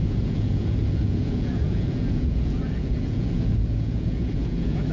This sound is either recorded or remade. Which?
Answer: remade